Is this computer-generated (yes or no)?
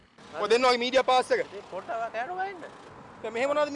no